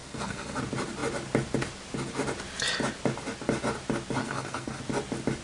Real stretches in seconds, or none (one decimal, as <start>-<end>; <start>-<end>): 0.6-4.2; 4.8-5.4